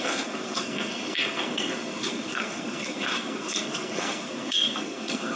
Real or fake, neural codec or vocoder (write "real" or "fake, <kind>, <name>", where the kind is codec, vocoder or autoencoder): fake, codec, SNAC